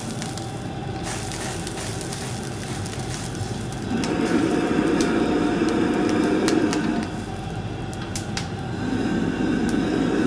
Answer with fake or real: real